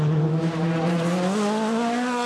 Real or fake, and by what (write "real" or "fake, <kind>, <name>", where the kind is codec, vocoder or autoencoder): real